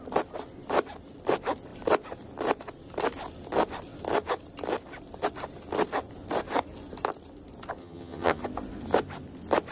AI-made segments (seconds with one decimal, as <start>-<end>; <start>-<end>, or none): 7.8-8.4